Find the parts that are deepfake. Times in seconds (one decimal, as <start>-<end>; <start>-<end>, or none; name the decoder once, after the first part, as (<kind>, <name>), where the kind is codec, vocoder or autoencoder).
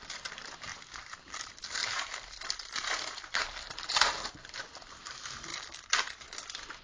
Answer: 0.0-0.7 (vocoder, BigVGAN v2); 1.2-5.5